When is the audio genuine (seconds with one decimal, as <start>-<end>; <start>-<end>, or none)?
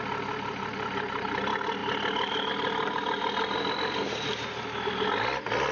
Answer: 0.0-5.7